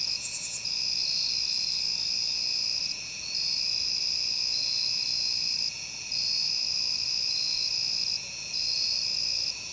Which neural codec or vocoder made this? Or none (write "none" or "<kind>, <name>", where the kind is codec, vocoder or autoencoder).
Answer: vocoder, Vocos